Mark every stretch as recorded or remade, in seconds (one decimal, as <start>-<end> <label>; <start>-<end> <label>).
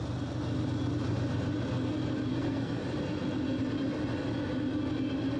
0.0-2.3 recorded; 2.3-2.8 remade; 2.8-5.4 recorded